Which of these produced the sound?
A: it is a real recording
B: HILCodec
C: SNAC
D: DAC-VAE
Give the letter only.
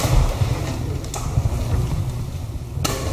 A